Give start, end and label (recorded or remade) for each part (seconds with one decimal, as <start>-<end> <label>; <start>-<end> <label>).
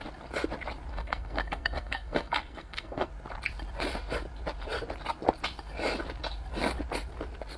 0.0-0.9 recorded; 0.9-3.1 remade; 3.1-7.6 recorded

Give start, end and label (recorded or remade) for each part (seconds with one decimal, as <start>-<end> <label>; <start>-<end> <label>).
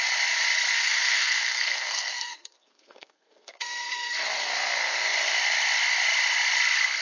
0.0-0.7 recorded; 0.7-4.1 remade; 4.1-7.0 recorded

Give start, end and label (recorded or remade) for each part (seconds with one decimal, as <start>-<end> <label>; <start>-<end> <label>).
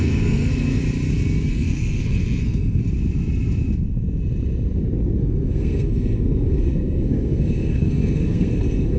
0.0-0.8 remade; 0.8-1.5 recorded; 1.5-2.8 remade; 2.8-5.2 recorded; 5.2-9.0 remade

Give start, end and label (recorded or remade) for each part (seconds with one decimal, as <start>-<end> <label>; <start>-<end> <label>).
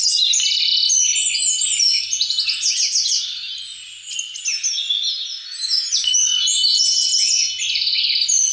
0.0-8.5 recorded